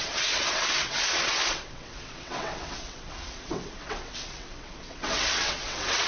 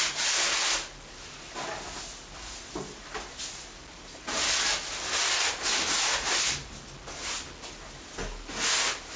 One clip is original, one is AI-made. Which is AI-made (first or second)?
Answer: first